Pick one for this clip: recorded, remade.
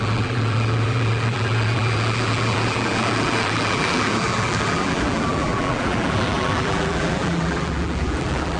remade